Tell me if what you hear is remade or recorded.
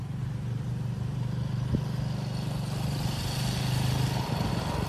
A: recorded